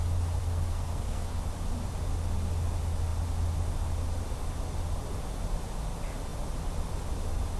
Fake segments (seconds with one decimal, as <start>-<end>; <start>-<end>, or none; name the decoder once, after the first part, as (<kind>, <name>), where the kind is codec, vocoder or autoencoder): 0.4-1.4 (codec, SNAC)